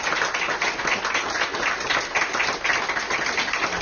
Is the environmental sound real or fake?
real